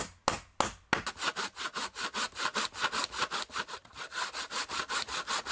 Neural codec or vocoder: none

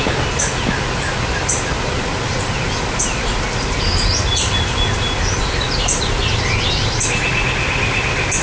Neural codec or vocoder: none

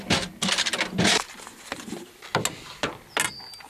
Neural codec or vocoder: none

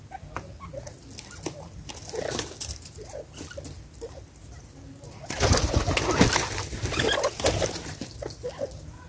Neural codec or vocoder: none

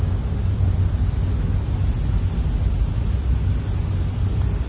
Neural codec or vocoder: none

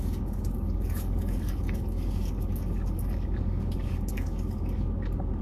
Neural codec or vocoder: codec, DAC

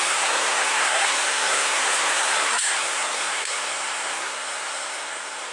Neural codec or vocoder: codec, SNAC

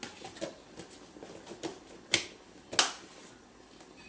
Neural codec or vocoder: none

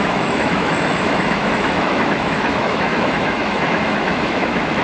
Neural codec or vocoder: autoencoder, DAC-VAE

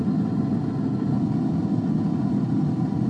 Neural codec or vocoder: none